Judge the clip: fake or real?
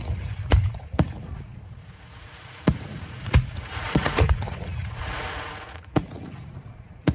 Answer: fake